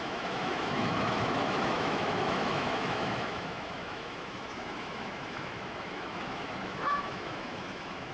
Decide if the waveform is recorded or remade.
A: remade